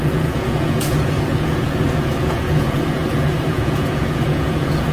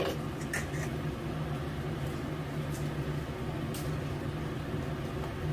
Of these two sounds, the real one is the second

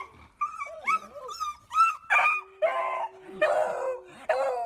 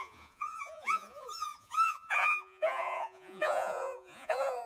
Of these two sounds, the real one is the first